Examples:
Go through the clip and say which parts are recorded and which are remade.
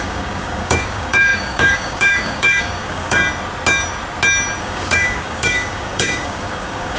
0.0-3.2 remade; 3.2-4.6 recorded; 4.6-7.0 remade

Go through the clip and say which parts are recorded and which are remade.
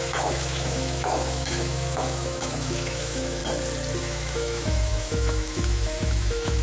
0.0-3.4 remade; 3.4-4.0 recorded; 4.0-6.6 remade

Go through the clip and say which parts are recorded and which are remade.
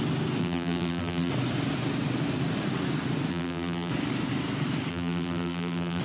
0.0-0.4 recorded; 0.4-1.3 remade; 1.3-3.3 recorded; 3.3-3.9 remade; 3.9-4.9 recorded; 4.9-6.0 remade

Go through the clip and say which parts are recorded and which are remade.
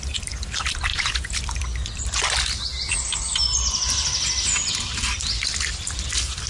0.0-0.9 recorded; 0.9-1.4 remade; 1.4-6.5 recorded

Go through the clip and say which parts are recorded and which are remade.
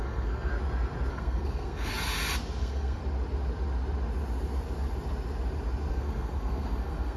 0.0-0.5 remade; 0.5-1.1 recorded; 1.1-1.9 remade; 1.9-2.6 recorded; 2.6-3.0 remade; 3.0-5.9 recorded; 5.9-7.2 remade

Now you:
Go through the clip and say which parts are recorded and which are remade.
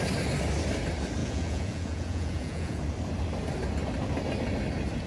0.0-1.2 recorded; 1.2-2.8 remade; 2.8-5.1 recorded